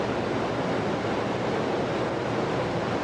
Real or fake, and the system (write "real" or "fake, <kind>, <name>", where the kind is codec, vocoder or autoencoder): real